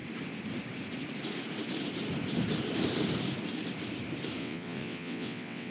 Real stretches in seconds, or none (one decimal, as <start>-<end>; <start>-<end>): 0.0-4.4